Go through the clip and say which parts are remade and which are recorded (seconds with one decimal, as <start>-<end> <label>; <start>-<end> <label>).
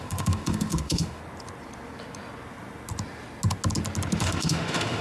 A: 0.0-1.2 remade; 1.2-4.2 recorded; 4.2-5.0 remade